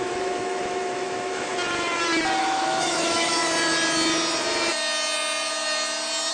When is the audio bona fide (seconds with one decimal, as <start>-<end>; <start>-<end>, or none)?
1.5-2.4; 3.4-6.3